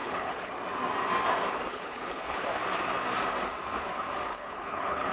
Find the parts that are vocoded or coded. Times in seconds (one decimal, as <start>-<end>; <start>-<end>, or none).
0.0-0.5; 1.7-2.4; 4.3-5.1